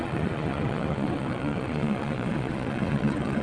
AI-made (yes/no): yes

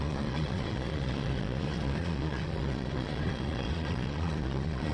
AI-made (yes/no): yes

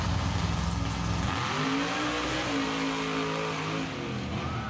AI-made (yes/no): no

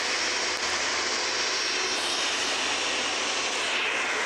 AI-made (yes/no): no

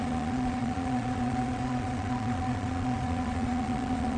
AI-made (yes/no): yes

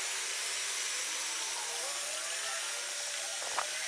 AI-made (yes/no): no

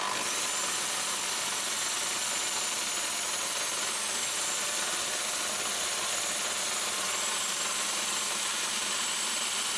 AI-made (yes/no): no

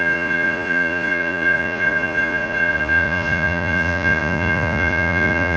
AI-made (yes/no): yes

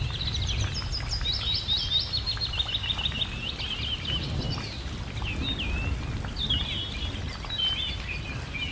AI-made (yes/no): no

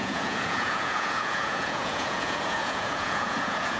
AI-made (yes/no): yes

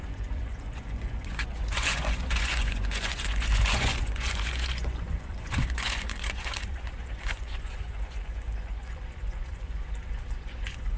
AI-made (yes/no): yes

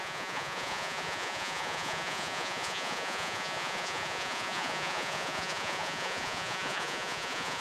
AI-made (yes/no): yes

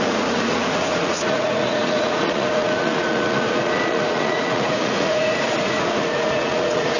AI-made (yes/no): yes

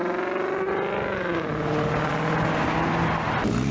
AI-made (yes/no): no